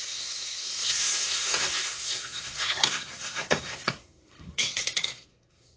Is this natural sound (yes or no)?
no